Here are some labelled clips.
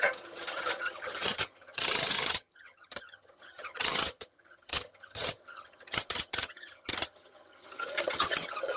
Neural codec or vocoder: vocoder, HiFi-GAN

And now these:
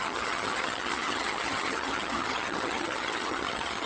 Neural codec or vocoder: vocoder, HiFi-GAN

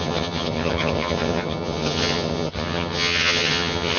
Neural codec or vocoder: vocoder, HiFi-GAN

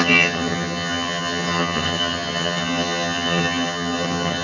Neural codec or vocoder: vocoder, HiFi-GAN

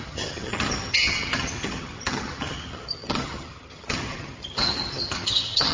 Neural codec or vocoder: vocoder, HiFi-GAN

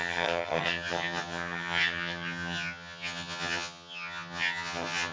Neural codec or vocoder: vocoder, HiFi-GAN